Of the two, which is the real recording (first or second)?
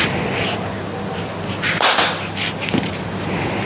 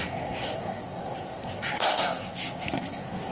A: first